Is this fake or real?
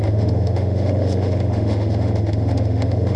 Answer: fake